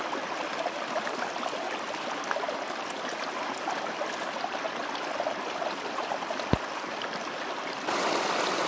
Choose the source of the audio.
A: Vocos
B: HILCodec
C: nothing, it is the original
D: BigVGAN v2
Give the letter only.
C